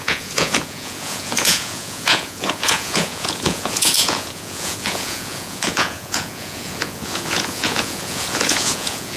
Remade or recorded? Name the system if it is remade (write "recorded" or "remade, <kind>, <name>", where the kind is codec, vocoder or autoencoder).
remade, vocoder, Vocos